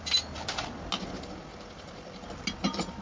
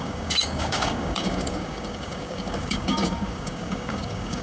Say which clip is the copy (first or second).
second